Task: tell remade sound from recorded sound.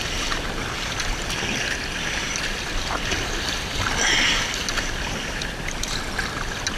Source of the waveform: remade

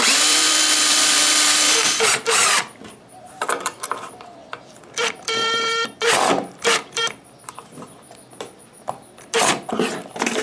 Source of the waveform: remade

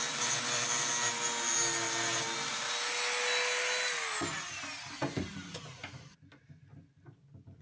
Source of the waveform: recorded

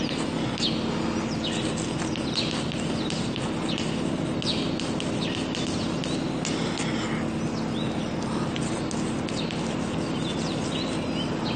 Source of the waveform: recorded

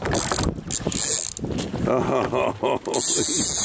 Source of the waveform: recorded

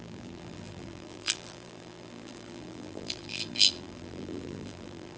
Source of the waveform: remade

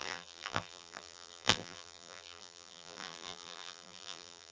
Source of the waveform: remade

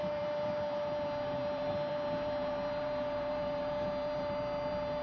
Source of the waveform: remade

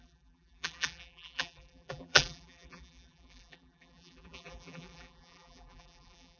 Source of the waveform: remade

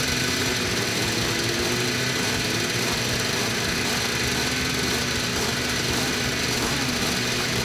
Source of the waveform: recorded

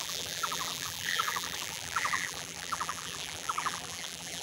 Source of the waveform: remade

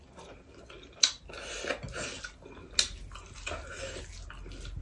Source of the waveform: recorded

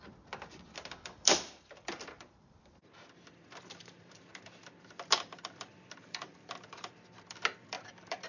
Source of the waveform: remade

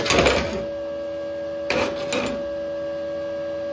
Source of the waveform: recorded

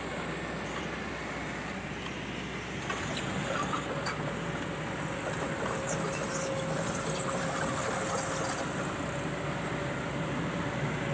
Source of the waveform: recorded